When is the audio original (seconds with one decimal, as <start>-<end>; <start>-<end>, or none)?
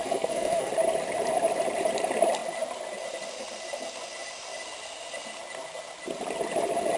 0.7-7.0